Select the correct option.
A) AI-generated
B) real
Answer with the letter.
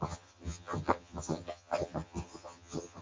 A